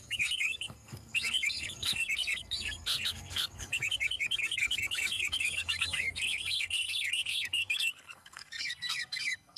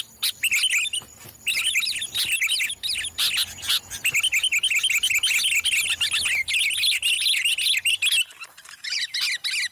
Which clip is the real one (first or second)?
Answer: second